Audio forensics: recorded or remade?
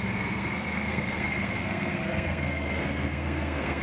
remade